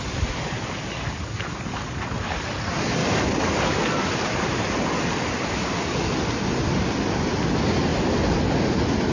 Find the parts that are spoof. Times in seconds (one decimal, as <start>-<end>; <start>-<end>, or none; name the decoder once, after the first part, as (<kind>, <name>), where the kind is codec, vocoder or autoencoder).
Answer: none